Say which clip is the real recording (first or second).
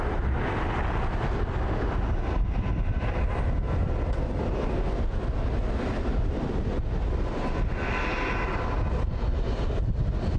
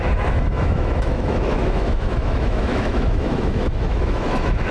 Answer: first